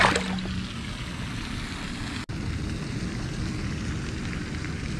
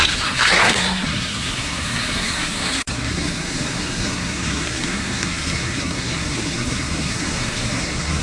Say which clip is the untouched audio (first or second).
first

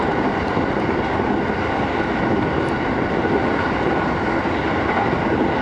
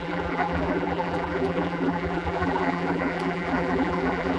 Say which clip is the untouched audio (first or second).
first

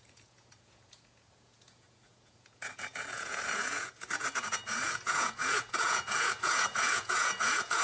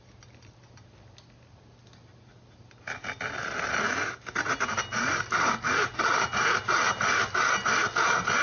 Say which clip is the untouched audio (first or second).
second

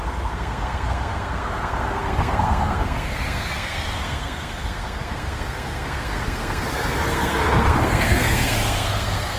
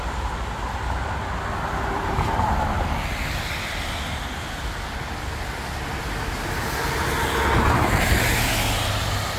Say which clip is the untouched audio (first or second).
second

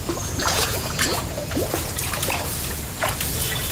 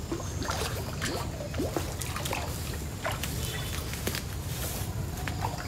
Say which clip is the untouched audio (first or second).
second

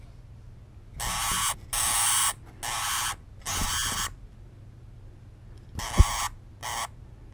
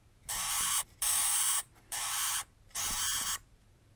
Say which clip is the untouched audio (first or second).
first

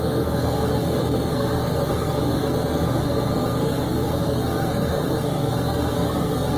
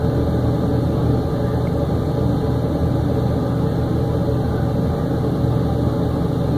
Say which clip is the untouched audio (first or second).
second